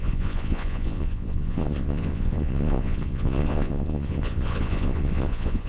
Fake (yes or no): yes